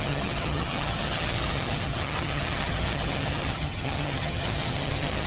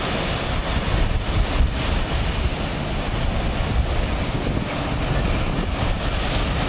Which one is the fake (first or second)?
first